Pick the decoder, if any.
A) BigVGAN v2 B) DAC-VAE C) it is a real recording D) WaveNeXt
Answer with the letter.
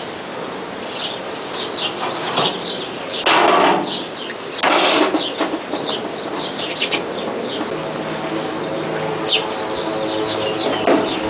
C